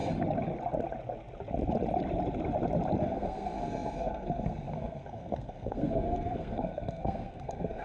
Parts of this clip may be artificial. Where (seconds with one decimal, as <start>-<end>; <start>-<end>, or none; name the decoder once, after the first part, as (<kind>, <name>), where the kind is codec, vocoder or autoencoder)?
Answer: 3.0-7.8 (codec, SNAC)